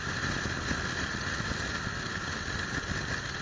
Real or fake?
real